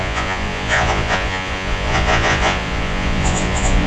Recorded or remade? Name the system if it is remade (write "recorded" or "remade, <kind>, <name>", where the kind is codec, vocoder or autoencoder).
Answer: remade, vocoder, Vocos